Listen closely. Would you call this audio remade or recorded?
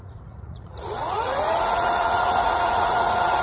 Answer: remade